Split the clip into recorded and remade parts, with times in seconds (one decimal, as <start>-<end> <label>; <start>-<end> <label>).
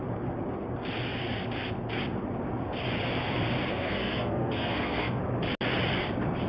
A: 0.0-3.7 recorded; 3.7-5.2 remade; 5.2-6.5 recorded